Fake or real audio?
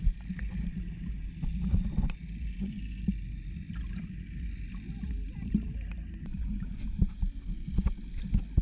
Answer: real